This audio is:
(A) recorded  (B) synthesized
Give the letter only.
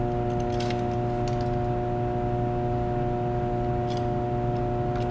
A